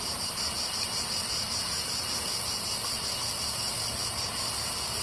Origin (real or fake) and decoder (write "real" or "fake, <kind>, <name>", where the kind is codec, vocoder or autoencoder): real